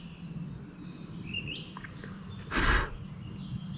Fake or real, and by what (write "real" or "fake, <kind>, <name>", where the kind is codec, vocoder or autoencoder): real